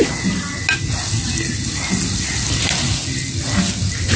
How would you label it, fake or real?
real